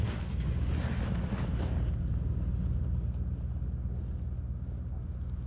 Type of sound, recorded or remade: recorded